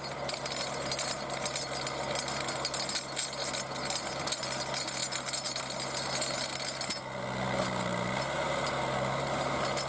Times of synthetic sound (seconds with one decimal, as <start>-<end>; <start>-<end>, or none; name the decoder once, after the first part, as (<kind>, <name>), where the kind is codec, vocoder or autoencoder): none